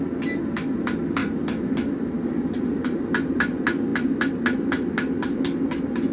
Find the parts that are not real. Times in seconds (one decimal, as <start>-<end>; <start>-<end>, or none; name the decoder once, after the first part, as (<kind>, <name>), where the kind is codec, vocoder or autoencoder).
none